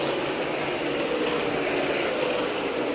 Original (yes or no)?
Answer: yes